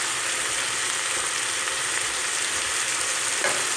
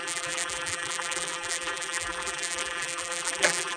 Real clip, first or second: first